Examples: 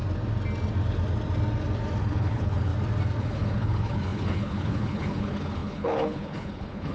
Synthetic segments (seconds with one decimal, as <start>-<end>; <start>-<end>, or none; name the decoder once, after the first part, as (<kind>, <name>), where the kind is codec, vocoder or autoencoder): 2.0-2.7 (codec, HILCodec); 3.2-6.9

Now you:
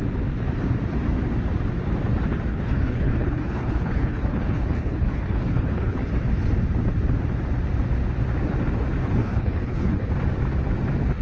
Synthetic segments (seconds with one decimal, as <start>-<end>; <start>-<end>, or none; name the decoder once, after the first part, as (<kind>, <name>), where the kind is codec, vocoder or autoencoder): 2.5-6.1 (codec, HILCodec); 9.2-10.1

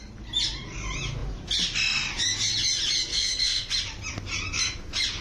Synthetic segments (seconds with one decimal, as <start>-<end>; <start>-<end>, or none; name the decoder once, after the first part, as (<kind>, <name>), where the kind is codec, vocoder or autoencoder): 3.1-3.7 (codec, SNAC)

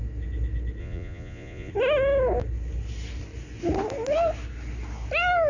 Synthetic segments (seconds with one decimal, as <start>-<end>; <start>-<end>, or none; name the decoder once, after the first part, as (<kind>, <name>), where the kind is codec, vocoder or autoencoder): 0.8-1.7 (vocoder, Vocos)

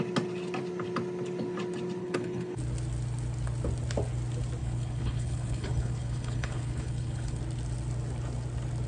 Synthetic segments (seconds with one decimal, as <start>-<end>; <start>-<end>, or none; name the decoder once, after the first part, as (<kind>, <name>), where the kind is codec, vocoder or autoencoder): 2.0-2.6 (codec, HILCodec); 4.6-7.4